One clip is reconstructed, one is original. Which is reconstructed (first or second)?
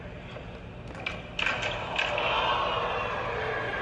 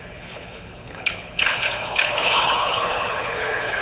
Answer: second